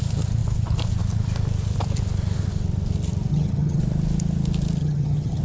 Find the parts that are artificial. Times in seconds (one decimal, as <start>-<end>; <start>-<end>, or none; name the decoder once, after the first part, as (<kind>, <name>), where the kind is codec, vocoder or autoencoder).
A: 3.3-3.8 (vocoder, HiFi-GAN); 4.8-5.4